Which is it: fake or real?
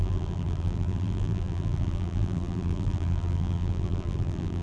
fake